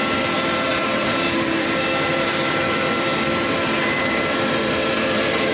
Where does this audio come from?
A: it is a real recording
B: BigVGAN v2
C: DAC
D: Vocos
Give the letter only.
B